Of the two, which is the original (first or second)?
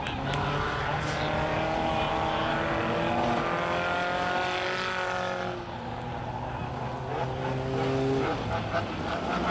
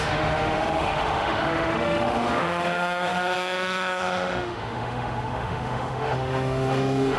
first